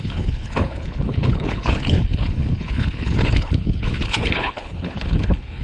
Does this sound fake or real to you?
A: fake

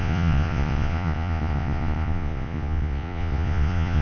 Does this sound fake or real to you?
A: fake